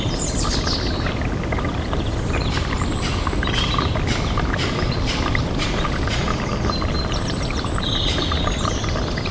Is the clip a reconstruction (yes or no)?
no